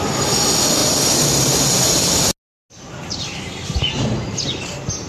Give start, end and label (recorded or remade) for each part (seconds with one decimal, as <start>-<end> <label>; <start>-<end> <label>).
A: 0.0-5.1 recorded